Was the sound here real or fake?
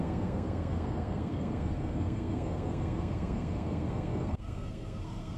fake